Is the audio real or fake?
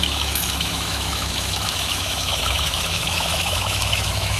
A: fake